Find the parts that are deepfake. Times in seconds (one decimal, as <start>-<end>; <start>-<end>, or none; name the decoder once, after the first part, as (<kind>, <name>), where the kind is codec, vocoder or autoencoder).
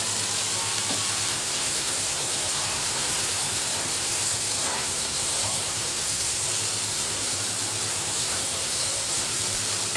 1.3-6.5 (codec, SNAC); 6.9-7.4; 7.9-9.4